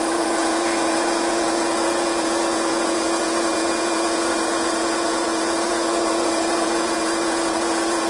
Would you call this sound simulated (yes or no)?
yes